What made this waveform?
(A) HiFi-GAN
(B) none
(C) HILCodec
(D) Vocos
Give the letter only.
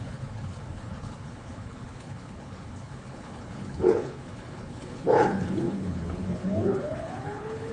C